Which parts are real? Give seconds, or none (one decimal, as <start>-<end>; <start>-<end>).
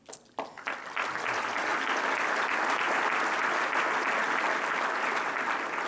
0.0-5.9